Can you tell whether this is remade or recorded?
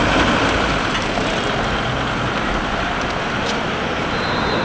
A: recorded